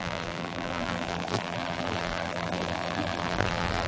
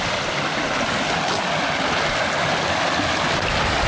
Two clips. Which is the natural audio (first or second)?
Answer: second